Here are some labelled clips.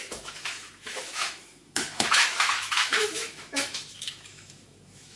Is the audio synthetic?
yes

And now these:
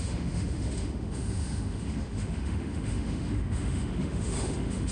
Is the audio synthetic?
yes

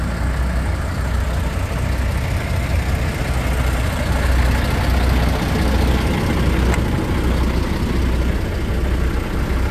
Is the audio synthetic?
no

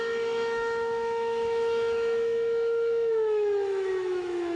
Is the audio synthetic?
yes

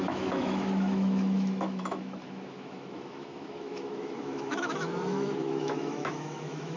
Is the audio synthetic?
yes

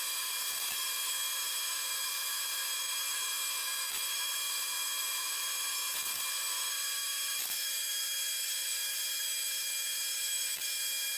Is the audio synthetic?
yes